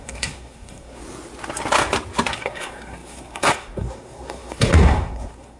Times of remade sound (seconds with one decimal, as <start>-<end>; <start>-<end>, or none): 0.0-1.0; 2.3-5.6